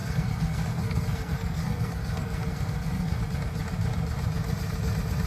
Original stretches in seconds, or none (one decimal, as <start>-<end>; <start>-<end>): 3.2-5.3